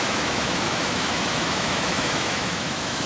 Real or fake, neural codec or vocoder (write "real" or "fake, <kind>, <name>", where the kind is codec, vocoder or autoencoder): fake, autoencoder, DAC-VAE